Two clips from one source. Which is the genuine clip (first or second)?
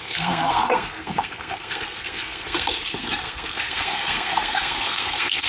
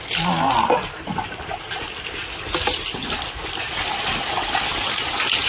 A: second